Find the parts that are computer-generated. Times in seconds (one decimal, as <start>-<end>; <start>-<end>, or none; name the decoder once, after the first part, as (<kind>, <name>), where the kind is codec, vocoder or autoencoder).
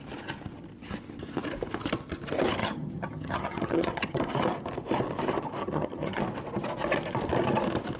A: 2.6-4.2 (vocoder, HiFi-GAN); 5.6-6.2